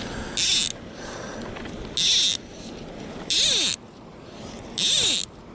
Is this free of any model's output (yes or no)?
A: yes